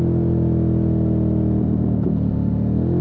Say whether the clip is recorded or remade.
recorded